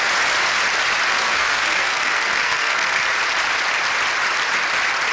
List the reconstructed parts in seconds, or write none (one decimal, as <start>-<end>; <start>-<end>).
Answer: 1.1-3.0